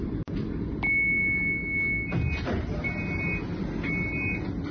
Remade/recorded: recorded